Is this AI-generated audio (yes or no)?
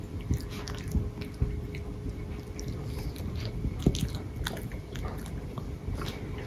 no